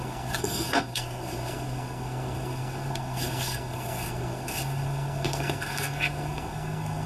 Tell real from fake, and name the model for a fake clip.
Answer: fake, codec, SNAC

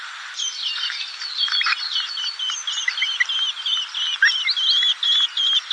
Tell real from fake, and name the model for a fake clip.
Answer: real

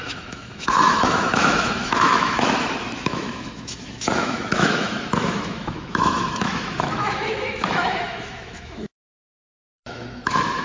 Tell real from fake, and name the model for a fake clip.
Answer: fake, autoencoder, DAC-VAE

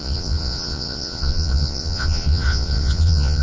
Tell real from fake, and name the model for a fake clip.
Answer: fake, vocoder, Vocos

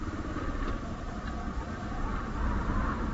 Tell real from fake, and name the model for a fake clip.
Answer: real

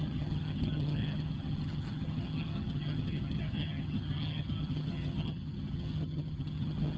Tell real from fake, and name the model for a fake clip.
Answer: fake, vocoder, HiFi-GAN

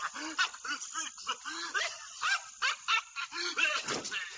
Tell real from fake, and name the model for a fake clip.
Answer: real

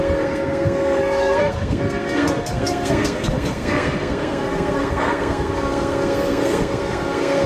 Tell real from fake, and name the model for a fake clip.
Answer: fake, codec, SNAC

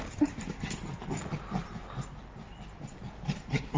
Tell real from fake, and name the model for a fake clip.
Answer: real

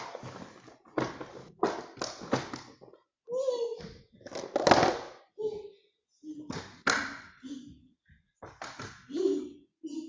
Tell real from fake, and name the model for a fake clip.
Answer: real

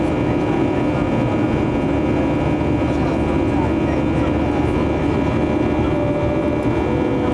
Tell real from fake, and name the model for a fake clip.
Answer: real